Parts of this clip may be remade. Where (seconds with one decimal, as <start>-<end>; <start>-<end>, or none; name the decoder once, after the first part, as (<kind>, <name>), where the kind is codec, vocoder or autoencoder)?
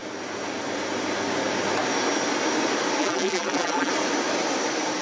3.0-3.9 (vocoder, BigVGAN v2)